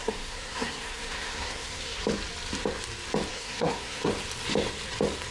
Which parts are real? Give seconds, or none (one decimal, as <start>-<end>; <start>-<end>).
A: 2.0-3.3; 4.1-5.3